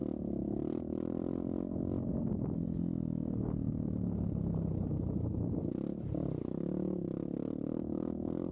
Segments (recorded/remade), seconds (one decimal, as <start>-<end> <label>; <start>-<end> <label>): 0.0-8.5 recorded